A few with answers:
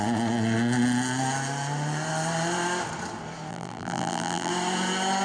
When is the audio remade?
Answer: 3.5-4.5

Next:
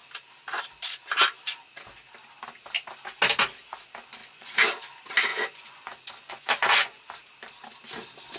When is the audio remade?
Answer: 4.2-4.7; 5.3-7.0

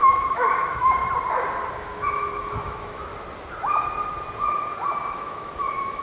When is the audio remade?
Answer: 0.0-1.0; 1.7-3.1; 5.1-6.0